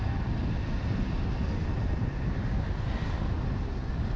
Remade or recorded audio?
recorded